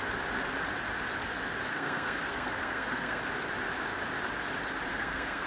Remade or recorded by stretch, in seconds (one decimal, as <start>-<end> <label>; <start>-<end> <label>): 0.0-1.7 recorded; 1.7-3.2 remade; 3.2-4.9 recorded; 4.9-5.5 remade